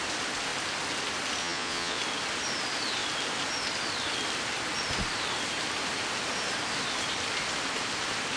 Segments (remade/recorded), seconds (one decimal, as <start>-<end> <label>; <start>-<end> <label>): 0.0-1.4 recorded; 1.4-2.0 remade; 2.0-8.4 recorded